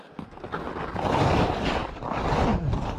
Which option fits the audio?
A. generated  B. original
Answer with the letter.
B